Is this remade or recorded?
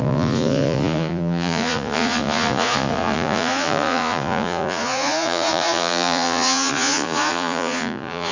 remade